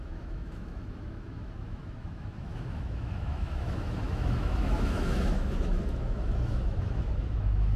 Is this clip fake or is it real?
fake